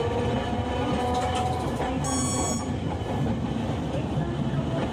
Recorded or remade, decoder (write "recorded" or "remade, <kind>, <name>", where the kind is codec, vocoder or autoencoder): recorded